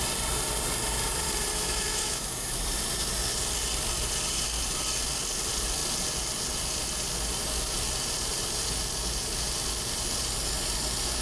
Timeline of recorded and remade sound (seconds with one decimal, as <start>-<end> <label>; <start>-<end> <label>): 0.0-1.5 recorded; 1.5-2.6 remade; 2.6-11.2 recorded